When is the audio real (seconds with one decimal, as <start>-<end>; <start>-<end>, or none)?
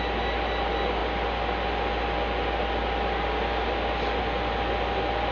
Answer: 0.0-5.3